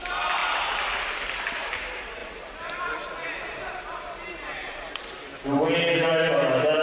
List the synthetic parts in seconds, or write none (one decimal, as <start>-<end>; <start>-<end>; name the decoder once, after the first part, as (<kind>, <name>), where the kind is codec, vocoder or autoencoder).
none